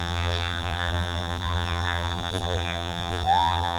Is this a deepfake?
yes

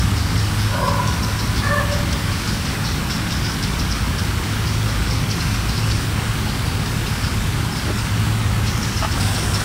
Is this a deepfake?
yes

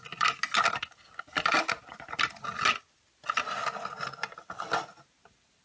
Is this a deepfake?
no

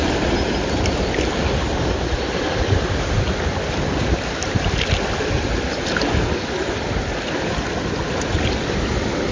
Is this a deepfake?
no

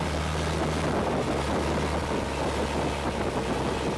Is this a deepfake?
no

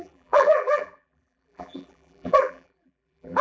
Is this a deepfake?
yes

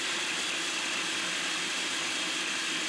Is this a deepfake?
no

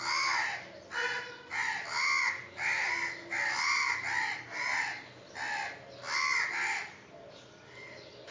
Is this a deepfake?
no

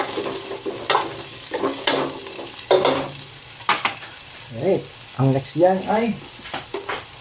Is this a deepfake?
no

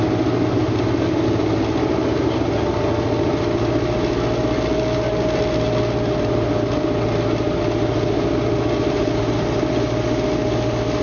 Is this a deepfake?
no